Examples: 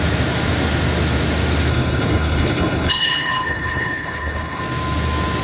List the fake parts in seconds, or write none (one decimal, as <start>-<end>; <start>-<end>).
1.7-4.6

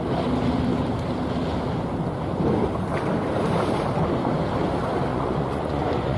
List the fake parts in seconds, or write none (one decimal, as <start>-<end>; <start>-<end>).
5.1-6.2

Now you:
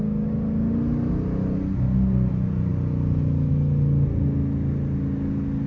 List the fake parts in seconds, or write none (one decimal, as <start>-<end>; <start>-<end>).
none

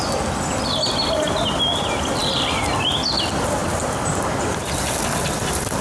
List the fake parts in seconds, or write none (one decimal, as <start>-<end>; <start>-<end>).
none

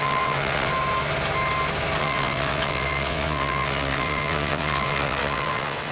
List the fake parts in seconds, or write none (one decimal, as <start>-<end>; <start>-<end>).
0.0-0.7; 2.0-5.9